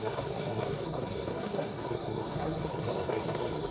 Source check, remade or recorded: remade